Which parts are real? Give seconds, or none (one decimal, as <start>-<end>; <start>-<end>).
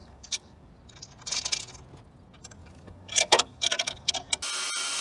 0.7-2.6; 4.1-5.0